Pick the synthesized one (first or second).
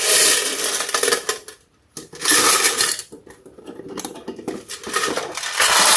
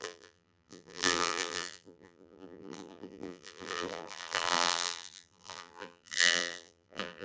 second